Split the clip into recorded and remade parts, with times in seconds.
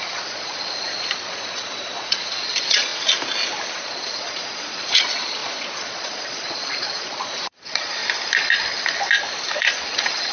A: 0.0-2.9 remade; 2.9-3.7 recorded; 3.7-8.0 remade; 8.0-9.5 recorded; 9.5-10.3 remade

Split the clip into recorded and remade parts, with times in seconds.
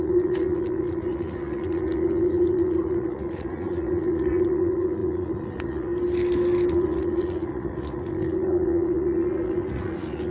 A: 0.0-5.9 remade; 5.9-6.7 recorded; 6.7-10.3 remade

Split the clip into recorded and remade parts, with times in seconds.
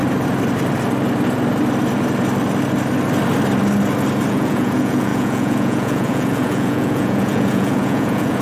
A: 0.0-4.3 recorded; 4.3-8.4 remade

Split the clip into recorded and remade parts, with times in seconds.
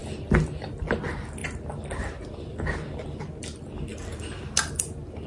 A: 0.0-5.3 recorded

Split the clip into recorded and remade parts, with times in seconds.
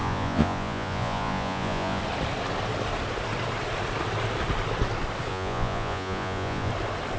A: 0.0-2.0 remade; 2.0-5.3 recorded; 5.3-6.7 remade; 6.7-7.2 recorded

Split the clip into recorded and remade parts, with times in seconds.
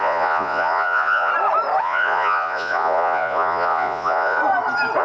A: 0.0-1.3 remade; 1.3-1.8 recorded; 1.8-4.4 remade; 4.4-5.0 recorded